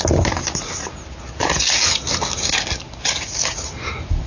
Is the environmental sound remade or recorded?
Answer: recorded